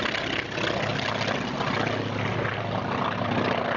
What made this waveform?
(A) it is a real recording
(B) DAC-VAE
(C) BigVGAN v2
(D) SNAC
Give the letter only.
A